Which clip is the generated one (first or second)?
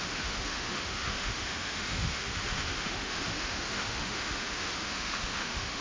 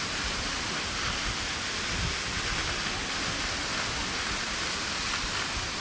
first